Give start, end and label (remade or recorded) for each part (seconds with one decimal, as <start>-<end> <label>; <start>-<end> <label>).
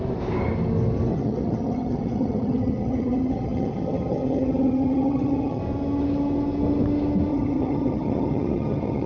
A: 0.0-1.1 recorded; 1.1-5.6 remade; 5.6-7.3 recorded; 7.3-9.1 remade